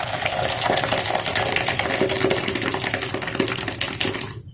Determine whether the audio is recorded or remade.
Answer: recorded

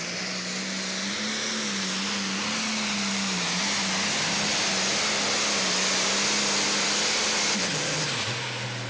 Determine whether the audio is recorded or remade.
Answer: recorded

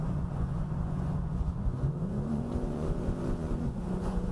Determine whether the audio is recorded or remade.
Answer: remade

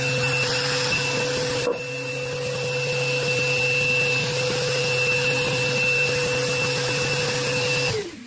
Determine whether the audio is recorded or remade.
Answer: recorded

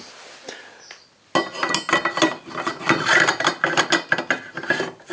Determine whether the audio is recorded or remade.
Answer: recorded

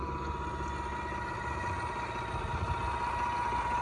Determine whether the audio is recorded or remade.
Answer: recorded